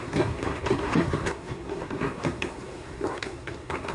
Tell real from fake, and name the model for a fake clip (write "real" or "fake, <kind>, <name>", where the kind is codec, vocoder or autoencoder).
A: fake, codec, SNAC